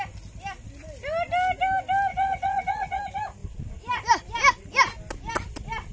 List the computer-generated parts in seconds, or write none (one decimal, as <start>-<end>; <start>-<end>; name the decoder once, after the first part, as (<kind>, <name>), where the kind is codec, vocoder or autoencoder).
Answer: 2.1-3.0 (vocoder, WaveNeXt)